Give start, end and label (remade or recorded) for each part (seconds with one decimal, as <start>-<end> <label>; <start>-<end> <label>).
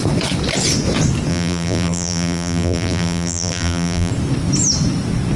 0.0-1.3 recorded; 1.3-4.1 remade; 4.1-5.4 recorded